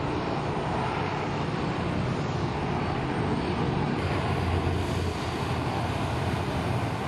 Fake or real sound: real